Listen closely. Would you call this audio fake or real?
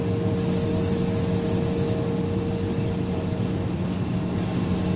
real